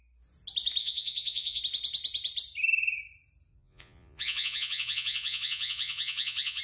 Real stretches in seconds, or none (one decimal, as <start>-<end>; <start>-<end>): 0.0-0.8; 1.6-3.5

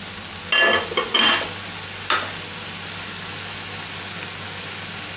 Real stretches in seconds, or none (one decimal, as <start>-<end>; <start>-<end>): 0.0-5.2

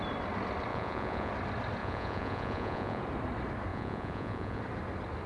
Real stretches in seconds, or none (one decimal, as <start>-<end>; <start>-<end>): 0.0-0.7; 1.3-1.8; 3.0-3.7; 4.6-5.3

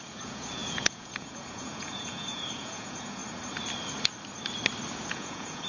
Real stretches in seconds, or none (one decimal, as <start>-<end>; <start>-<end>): 3.2-5.1

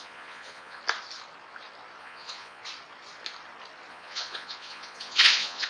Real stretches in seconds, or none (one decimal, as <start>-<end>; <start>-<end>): 0.8-2.0; 2.6-3.9

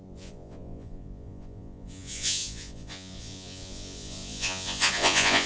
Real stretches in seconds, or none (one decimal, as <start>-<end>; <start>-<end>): none